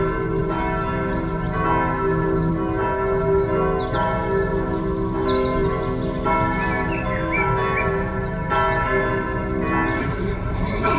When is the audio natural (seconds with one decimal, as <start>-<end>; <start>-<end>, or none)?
0.0-10.0